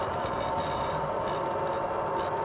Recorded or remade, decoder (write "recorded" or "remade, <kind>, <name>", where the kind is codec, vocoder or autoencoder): recorded